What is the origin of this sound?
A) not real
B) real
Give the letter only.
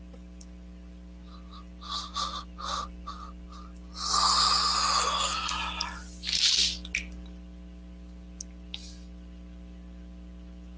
B